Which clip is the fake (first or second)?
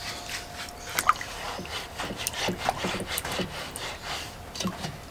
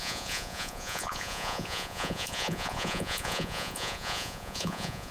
second